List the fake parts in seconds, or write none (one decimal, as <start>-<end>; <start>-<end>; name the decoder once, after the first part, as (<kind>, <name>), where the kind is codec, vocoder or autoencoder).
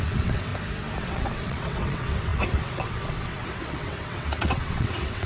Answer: 0.0-0.5 (vocoder, WaveNeXt); 1.0-5.3